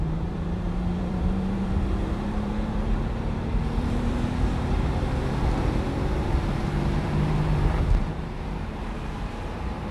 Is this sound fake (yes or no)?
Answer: yes